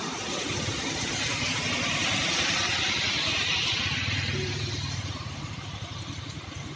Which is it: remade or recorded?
recorded